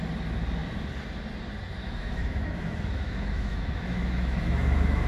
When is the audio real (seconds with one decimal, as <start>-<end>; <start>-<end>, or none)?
0.0-1.8